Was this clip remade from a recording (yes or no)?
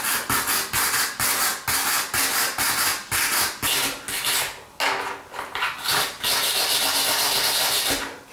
no